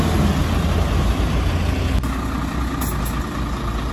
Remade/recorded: recorded